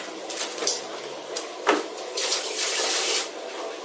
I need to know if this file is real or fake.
fake